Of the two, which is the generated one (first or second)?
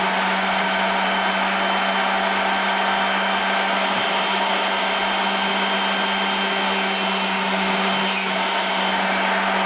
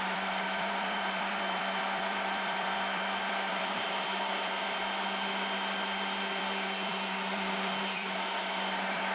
second